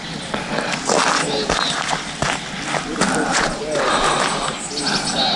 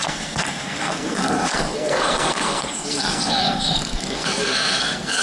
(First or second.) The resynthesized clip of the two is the second